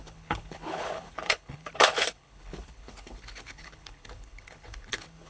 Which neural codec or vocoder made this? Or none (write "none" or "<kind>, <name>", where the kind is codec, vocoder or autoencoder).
codec, HILCodec